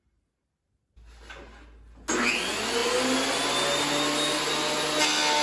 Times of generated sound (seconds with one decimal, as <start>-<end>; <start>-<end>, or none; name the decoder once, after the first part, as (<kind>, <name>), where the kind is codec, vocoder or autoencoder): none